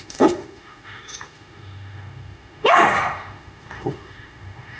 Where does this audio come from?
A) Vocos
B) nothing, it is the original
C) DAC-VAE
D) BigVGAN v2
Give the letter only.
C